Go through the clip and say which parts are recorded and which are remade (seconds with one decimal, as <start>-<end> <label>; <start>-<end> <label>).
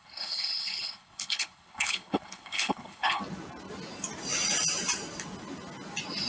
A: 0.0-3.2 remade; 3.2-6.3 recorded